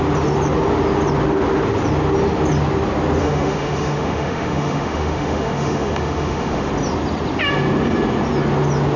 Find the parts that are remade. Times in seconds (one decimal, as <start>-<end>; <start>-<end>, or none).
3.2-6.7